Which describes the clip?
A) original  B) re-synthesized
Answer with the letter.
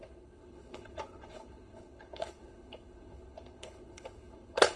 B